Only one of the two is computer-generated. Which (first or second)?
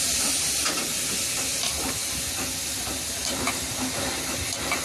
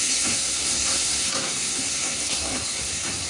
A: second